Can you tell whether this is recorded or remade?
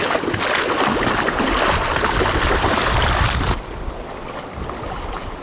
recorded